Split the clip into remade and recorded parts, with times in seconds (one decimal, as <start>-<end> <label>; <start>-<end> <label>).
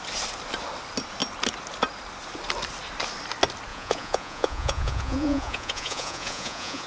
0.0-3.7 recorded; 3.7-6.9 remade